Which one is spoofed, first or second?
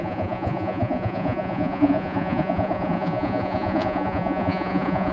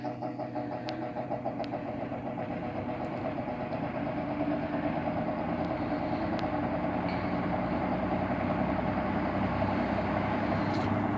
first